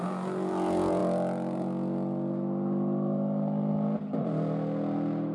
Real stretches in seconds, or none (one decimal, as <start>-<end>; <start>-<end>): 0.0-5.3